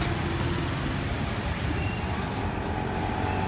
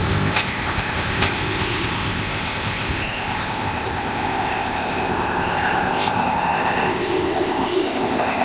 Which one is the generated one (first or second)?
second